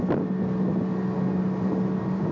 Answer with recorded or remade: recorded